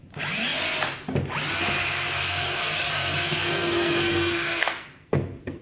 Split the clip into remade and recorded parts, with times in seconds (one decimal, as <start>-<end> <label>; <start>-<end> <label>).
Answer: 0.0-2.2 recorded; 2.2-5.6 remade

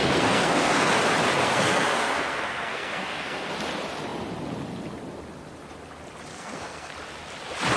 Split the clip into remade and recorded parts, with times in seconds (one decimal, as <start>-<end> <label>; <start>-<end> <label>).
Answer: 0.0-0.9 remade; 0.9-1.4 recorded; 1.4-3.5 remade; 3.5-6.3 recorded; 6.3-6.9 remade; 6.9-7.8 recorded

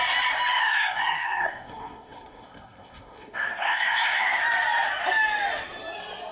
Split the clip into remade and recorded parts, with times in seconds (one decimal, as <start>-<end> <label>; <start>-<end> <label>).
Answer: 0.0-0.6 recorded; 0.6-4.4 remade; 4.4-6.3 recorded

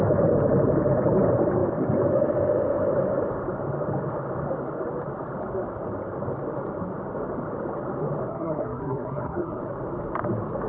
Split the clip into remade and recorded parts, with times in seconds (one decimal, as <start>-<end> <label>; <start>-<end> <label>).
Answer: 0.0-8.3 recorded; 8.3-9.6 remade; 9.6-10.7 recorded